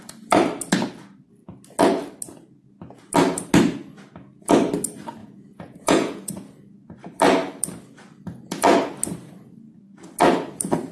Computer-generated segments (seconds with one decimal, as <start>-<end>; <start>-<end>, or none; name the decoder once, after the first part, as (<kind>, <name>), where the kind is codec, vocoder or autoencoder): 5.2-6.3 (vocoder, Vocos)